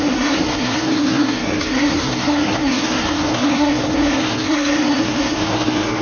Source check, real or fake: fake